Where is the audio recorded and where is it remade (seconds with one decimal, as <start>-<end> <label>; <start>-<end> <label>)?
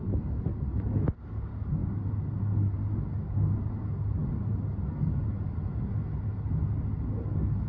0.0-7.7 recorded